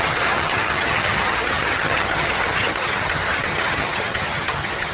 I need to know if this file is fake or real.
fake